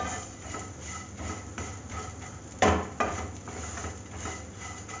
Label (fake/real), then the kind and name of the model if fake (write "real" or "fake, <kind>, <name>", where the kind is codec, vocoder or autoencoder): real